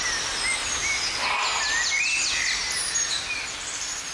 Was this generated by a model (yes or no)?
no